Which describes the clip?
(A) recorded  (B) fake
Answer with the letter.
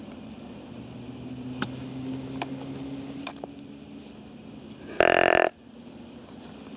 A